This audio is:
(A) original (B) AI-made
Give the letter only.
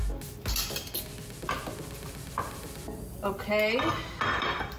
A